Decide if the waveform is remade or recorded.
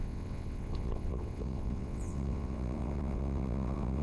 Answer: remade